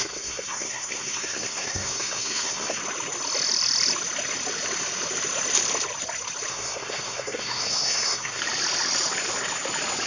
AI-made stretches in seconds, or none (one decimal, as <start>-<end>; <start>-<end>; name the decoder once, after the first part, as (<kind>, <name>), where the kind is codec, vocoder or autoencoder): 0.0-2.8 (codec, SNAC); 6.5-8.4